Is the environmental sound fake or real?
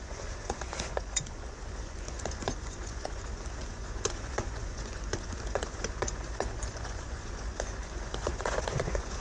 fake